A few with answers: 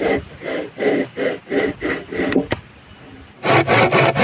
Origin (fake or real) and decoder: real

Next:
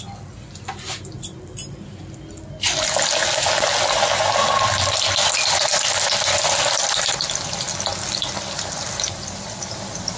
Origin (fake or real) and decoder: real